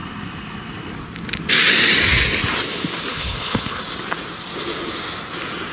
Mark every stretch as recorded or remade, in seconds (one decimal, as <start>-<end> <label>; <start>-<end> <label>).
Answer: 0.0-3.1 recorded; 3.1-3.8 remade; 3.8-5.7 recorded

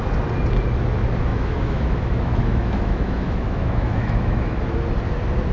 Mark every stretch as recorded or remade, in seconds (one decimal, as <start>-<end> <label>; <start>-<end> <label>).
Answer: 0.0-1.3 recorded; 1.3-4.6 remade; 4.6-5.5 recorded

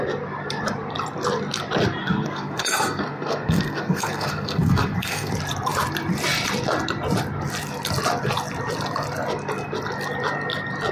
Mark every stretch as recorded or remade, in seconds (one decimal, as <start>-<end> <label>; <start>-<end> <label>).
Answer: 0.0-2.0 recorded; 2.0-5.3 remade; 5.3-10.9 recorded